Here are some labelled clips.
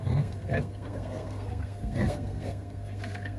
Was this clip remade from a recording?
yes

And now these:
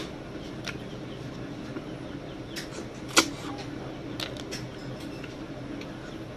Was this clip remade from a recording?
no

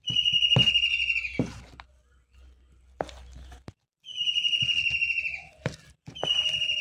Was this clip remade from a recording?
no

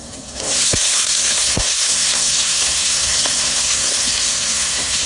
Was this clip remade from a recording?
yes